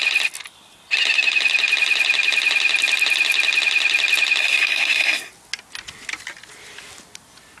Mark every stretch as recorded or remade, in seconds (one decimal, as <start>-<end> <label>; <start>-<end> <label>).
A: 0.0-4.4 recorded; 4.4-5.3 remade; 5.3-7.6 recorded